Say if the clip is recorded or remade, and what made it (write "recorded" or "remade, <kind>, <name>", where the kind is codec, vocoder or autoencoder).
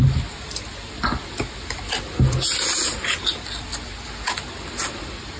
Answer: recorded